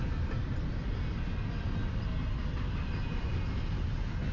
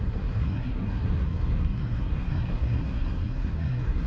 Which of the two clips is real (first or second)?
first